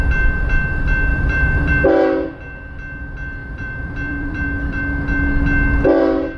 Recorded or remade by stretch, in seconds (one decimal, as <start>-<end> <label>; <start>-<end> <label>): 0.0-1.1 recorded; 1.1-1.7 remade; 1.7-3.4 recorded; 3.4-4.8 remade; 4.8-6.4 recorded